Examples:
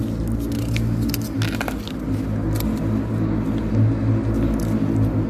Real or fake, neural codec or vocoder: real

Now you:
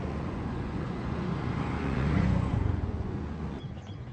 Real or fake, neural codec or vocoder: fake, vocoder, Vocos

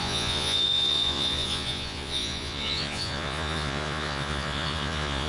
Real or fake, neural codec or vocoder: fake, vocoder, Vocos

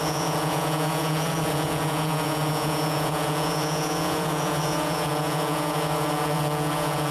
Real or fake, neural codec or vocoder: fake, vocoder, Vocos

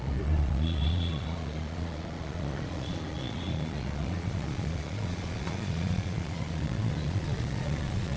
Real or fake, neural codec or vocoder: fake, vocoder, Vocos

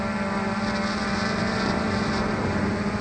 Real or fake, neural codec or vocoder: real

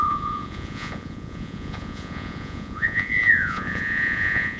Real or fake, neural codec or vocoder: fake, vocoder, Vocos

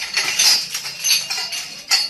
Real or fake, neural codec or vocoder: real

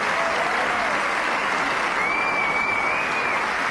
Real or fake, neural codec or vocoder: real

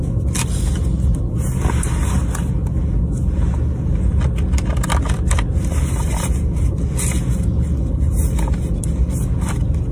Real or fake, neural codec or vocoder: real